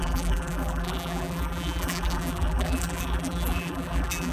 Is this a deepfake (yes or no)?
yes